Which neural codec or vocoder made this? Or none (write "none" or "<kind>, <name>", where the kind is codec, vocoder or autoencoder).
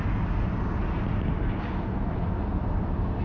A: none